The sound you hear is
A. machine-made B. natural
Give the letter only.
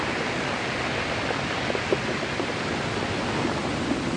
B